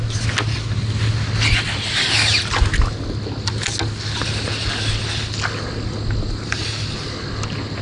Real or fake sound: real